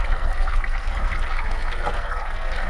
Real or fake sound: fake